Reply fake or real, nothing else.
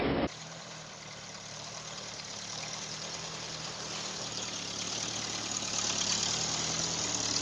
real